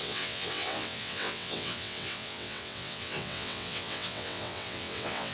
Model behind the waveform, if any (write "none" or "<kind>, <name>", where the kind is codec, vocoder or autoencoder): vocoder, WaveNeXt